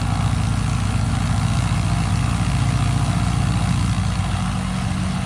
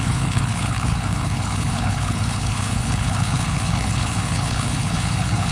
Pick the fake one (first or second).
second